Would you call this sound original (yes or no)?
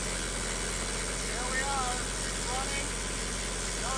yes